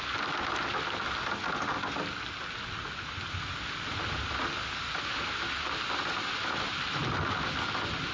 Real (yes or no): yes